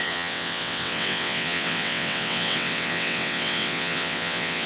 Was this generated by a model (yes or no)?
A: yes